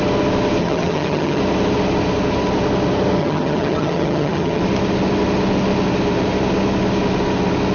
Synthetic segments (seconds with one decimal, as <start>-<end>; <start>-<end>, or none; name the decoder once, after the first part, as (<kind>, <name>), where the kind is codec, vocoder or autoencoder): 0.6-1.4 (vocoder, HiFi-GAN); 3.2-4.6